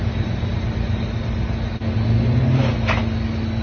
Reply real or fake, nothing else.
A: real